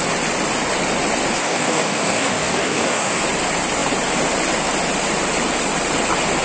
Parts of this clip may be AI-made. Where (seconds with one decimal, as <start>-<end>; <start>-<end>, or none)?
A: 1.4-3.2